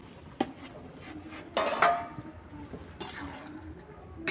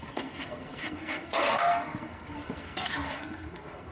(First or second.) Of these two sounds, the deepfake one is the second